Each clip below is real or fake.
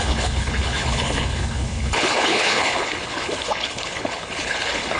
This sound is fake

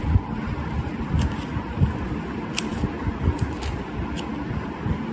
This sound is real